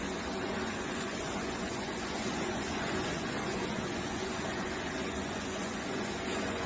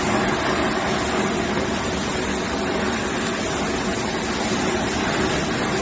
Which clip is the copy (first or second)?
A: first